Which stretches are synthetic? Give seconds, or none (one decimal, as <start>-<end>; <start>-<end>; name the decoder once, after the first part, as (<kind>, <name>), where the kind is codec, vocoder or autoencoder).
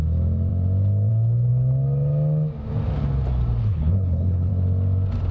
3.6-4.5 (codec, HILCodec)